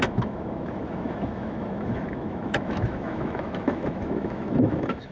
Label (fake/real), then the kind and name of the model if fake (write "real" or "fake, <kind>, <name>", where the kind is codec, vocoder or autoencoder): fake, autoencoder, DAC-VAE